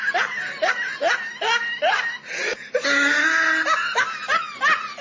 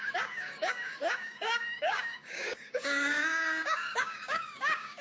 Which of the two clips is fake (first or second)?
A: second